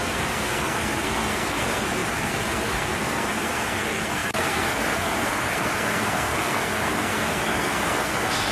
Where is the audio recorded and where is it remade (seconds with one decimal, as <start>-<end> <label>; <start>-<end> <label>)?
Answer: 0.0-8.5 remade